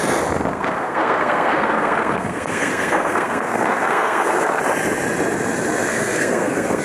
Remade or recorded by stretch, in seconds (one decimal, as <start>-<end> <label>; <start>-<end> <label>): 0.0-0.5 recorded; 0.5-4.6 remade; 4.6-5.9 recorded; 5.9-6.8 remade